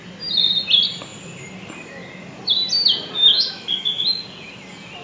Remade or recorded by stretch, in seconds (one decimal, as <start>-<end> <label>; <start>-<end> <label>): 0.0-3.3 recorded; 3.3-4.2 remade; 4.2-5.0 recorded